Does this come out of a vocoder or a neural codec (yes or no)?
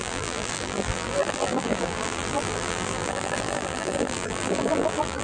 yes